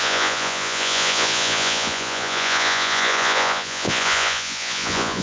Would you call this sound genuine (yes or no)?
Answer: no